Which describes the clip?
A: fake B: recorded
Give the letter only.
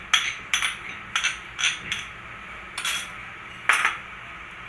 B